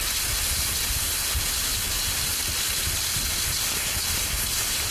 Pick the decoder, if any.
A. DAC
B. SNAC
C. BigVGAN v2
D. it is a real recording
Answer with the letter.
D